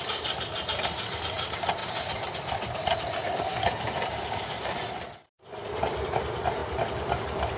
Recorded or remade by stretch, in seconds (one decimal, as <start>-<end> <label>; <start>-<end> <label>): 0.0-7.6 recorded